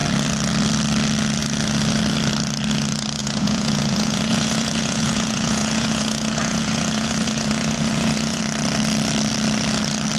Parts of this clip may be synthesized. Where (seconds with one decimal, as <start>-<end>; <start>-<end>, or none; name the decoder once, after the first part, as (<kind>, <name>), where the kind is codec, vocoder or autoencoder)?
3.2-8.4 (vocoder, Vocos)